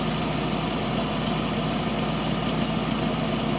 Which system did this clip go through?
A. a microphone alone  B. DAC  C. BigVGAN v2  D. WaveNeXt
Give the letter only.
A